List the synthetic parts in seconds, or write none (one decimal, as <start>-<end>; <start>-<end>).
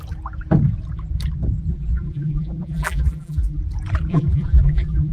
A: 1.7-3.6; 4.1-5.1